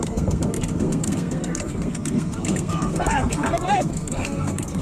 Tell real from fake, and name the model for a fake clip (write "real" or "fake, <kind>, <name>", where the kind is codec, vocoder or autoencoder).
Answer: fake, codec, SNAC